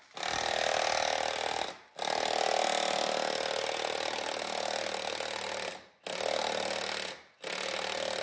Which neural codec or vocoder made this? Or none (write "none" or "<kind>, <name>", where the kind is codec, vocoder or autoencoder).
none